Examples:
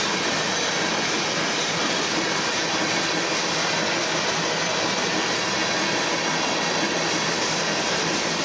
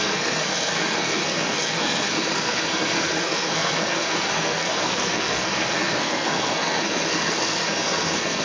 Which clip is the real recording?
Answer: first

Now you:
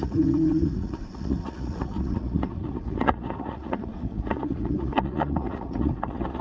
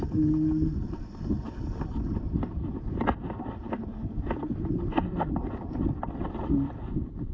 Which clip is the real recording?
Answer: second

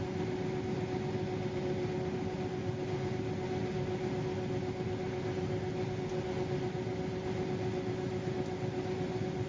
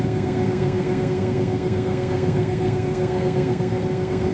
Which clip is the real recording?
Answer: first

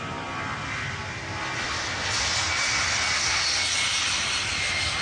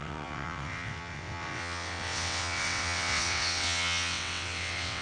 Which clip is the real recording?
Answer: first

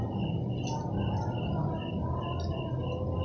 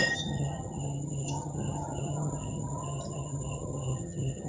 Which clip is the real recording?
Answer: first